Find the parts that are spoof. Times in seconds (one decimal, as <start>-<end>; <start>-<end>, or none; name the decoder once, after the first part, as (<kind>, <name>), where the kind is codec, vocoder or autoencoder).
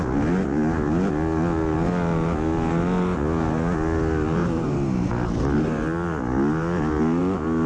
4.4-5.1 (vocoder, BigVGAN v2)